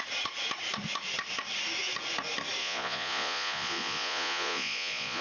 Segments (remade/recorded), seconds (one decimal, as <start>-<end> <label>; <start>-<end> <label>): 0.0-2.6 recorded; 2.6-5.2 remade